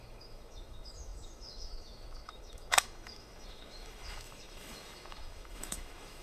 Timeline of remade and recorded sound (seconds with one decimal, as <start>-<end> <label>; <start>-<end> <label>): 0.0-6.2 remade